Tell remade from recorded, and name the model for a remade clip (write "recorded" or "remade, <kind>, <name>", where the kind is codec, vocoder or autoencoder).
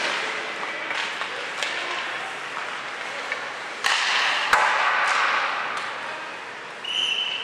recorded